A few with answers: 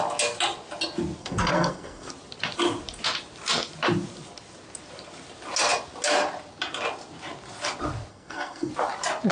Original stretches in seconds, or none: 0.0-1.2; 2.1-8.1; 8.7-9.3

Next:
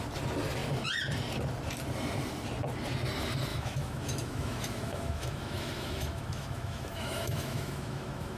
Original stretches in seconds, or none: 0.0-3.5

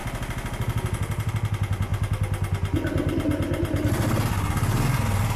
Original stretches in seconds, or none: 0.0-5.4

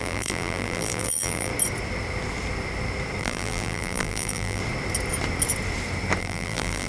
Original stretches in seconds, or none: 1.5-3.2; 4.6-6.2

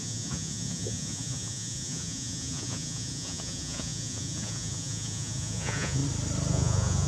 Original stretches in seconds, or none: 6.0-6.5

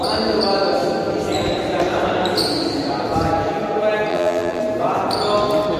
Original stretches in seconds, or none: 0.0-4.1; 4.6-5.8

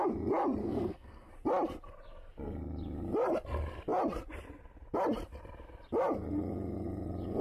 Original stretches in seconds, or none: 0.0-0.6; 1.3-7.4

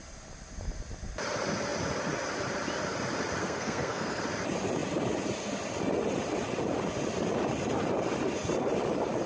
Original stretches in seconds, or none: 0.0-3.4; 4.2-9.3